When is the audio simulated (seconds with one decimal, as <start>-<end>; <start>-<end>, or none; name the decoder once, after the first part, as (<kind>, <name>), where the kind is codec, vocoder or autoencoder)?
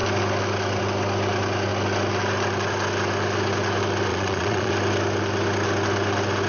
4.1-4.7 (vocoder, Vocos)